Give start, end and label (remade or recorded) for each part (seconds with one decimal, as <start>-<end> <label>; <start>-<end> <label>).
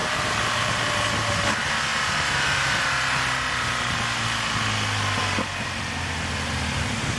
0.0-0.8 remade; 0.8-1.9 recorded; 1.9-2.8 remade; 2.8-7.2 recorded